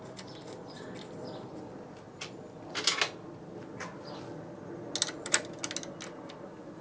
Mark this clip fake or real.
real